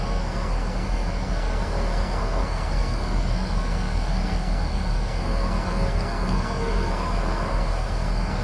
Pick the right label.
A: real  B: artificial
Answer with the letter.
B